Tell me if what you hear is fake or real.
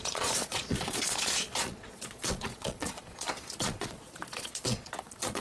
fake